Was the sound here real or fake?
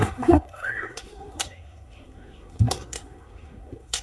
fake